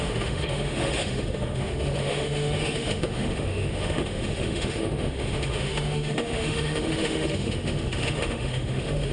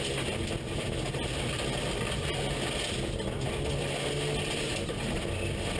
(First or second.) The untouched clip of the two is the second